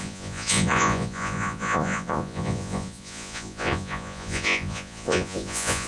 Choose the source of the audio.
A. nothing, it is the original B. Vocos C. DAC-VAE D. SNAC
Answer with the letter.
B